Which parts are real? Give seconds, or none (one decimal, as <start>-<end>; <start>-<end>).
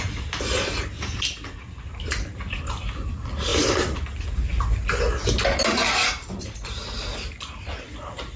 0.0-8.4